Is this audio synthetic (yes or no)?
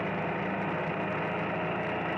no